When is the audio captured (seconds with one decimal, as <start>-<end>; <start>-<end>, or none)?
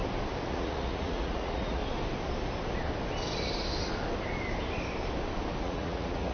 0.0-0.5; 1.8-5.6